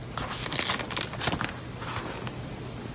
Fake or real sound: real